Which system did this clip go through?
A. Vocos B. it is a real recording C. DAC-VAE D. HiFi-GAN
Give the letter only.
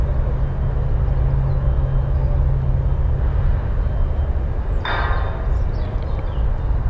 B